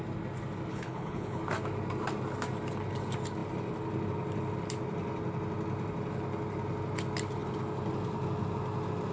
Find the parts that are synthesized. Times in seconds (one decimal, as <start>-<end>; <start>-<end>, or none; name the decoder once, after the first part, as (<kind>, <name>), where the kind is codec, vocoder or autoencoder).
0.7-1.4 (codec, HILCodec)